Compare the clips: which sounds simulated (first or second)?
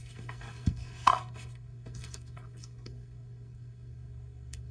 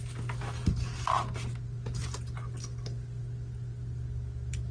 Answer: first